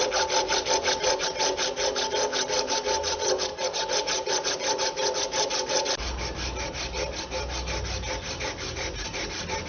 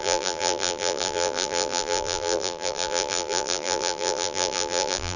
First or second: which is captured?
first